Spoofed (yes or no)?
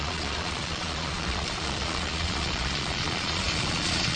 yes